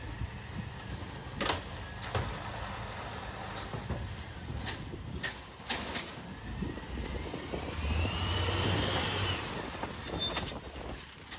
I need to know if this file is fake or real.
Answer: real